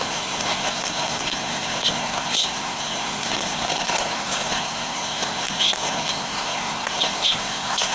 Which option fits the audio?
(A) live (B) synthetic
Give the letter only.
B